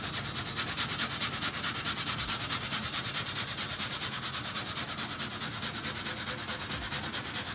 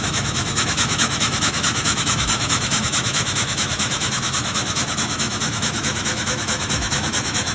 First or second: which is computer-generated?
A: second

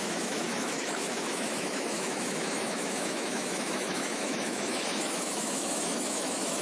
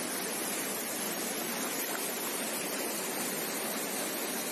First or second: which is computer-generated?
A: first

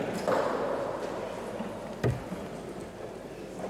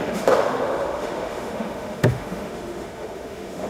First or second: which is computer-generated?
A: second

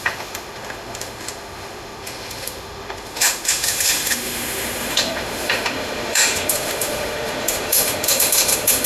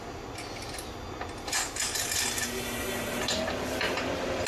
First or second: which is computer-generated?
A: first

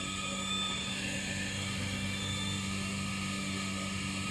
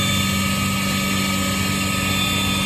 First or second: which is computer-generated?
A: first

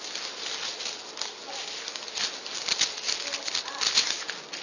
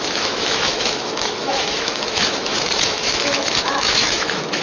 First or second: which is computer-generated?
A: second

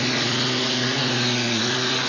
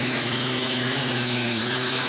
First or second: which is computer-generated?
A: second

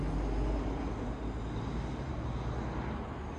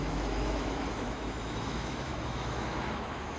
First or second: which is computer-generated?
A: second